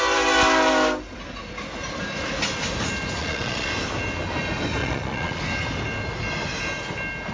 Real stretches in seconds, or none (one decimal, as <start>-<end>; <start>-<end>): 0.0-3.2; 3.7-4.8; 5.4-7.3